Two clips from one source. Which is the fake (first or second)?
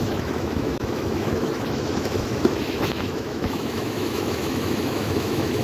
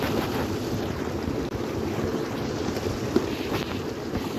first